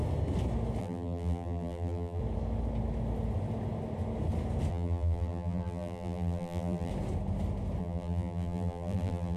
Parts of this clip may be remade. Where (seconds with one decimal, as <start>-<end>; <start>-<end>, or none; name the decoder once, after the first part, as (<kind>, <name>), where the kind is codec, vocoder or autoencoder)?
0.8-2.2 (vocoder, BigVGAN v2); 4.7-6.9; 7.8-9.4